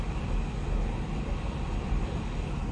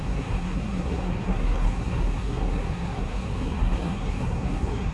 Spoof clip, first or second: second